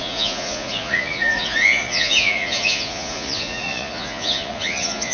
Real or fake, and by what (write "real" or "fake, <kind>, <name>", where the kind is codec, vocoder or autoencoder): fake, vocoder, Vocos